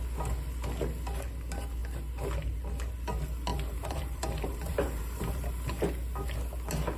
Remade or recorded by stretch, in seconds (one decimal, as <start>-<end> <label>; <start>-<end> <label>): 0.0-3.5 recorded; 3.5-5.5 remade; 5.5-7.0 recorded